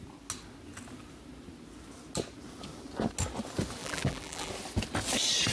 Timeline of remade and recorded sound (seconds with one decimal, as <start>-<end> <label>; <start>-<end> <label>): 0.0-3.8 recorded; 3.8-4.5 remade; 4.5-5.5 recorded